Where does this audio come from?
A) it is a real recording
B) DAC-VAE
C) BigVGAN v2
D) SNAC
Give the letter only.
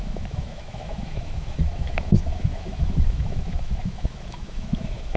B